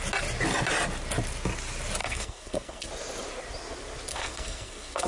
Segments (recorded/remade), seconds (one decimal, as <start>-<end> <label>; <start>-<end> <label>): 0.0-2.0 recorded; 2.0-2.9 remade; 2.9-4.1 recorded; 4.1-5.1 remade